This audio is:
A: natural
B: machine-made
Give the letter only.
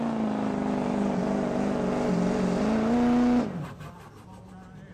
A